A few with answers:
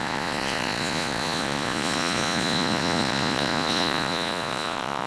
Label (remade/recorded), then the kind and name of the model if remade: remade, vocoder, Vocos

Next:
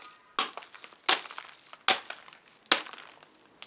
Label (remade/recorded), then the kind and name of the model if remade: recorded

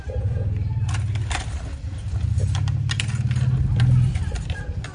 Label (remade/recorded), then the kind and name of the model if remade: recorded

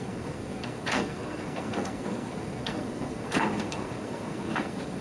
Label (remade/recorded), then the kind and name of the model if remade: remade, codec, SNAC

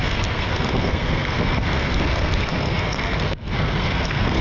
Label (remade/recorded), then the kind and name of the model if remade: remade, codec, SNAC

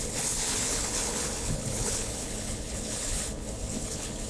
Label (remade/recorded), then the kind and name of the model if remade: remade, codec, HILCodec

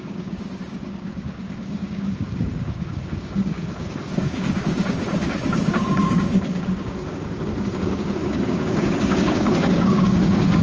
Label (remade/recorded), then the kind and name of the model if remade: remade, codec, DAC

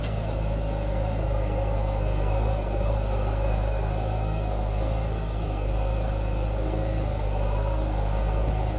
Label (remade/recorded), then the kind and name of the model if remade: remade, codec, SNAC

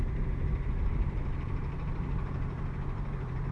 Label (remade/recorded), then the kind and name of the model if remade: remade, vocoder, BigVGAN v2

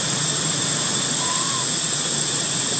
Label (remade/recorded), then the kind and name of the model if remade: remade, vocoder, Vocos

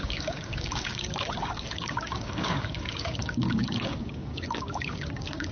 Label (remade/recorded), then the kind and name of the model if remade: remade, codec, DAC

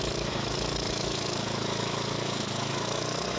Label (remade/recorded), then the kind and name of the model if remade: remade, autoencoder, DAC-VAE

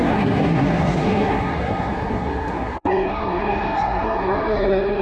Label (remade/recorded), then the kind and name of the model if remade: remade, codec, SNAC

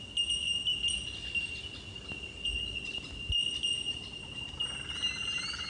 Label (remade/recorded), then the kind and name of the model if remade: recorded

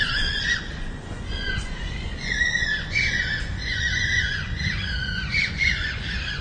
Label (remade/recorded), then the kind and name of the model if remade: remade, vocoder, Vocos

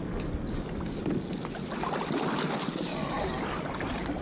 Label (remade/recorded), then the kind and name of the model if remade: recorded